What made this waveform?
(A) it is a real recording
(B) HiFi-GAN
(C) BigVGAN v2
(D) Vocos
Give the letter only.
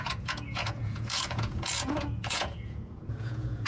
D